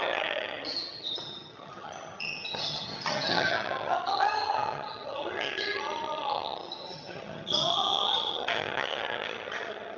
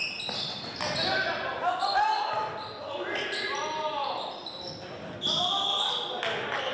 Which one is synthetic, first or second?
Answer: first